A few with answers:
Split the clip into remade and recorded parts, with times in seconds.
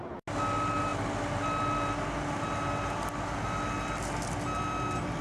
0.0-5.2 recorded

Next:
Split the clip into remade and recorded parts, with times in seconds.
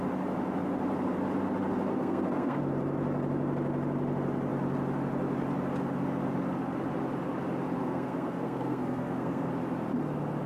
0.0-1.9 recorded; 1.9-2.6 remade; 2.6-7.8 recorded; 7.8-9.5 remade; 9.5-10.5 recorded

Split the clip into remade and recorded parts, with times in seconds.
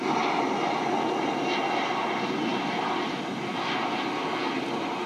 0.0-5.1 recorded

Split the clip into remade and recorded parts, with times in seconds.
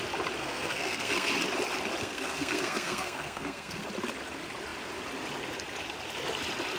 0.0-0.4 recorded; 0.4-1.3 remade; 1.3-2.0 recorded; 2.0-3.9 remade; 3.9-6.8 recorded